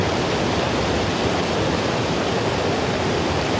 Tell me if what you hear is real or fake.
real